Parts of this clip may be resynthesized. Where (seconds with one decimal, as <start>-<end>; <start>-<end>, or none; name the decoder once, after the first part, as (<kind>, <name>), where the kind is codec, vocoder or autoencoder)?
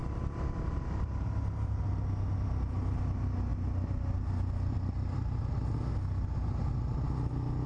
0.0-2.0 (vocoder, BigVGAN v2)